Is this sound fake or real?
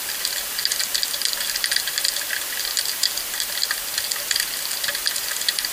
real